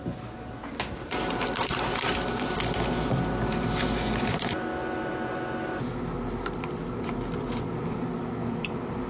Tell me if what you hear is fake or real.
real